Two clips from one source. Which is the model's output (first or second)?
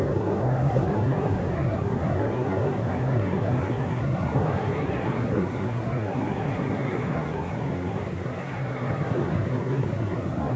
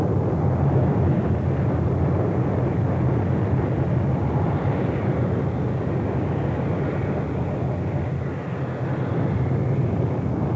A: first